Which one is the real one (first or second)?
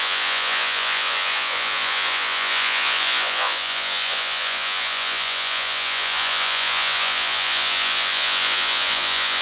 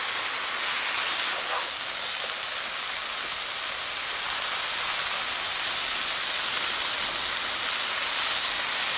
second